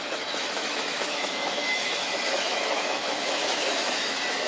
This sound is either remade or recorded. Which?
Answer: remade